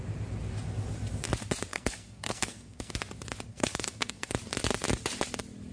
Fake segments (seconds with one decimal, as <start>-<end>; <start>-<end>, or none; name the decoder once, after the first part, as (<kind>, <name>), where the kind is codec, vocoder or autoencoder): 1.7-2.9 (codec, SNAC); 3.5-4.3